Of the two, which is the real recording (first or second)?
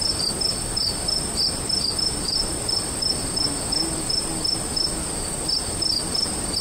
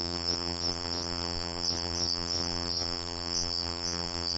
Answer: first